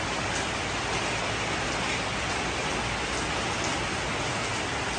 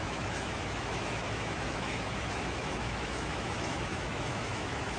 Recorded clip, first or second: first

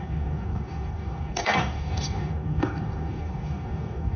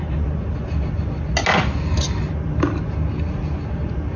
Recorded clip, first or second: second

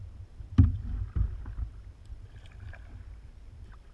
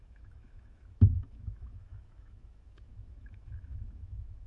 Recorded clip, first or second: first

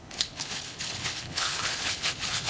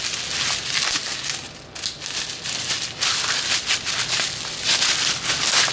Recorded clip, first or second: second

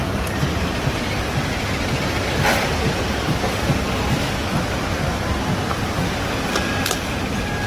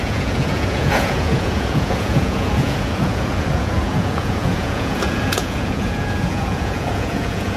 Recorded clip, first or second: first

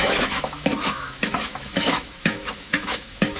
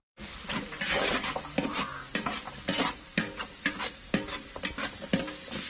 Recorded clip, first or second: second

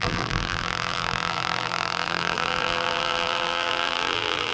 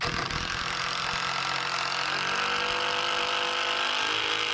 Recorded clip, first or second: second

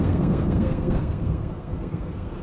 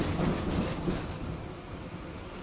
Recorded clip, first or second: second